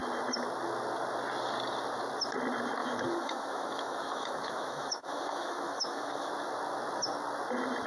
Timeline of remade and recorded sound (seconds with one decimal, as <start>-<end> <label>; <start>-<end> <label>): 0.0-2.8 recorded; 2.8-6.3 remade; 6.3-7.9 recorded